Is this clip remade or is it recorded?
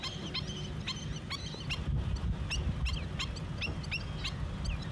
recorded